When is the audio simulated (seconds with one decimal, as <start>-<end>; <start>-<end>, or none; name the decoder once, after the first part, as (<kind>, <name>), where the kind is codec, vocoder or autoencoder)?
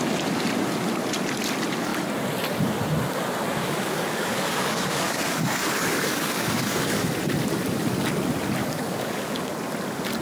3.6-7.1 (codec, DAC); 8.6-9.5